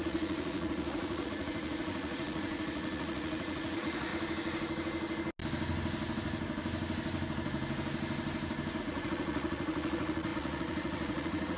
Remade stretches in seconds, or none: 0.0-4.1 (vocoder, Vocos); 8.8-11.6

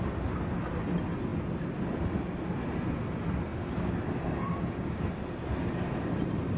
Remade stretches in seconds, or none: none

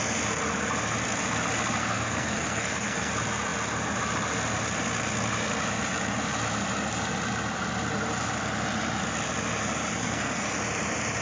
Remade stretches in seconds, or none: 1.8-3.1 (codec, SNAC); 10.0-10.6

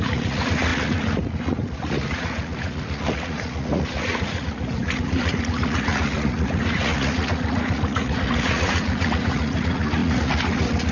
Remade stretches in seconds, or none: 0.0-10.9 (vocoder, Vocos)

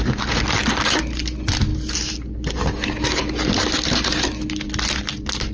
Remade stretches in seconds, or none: none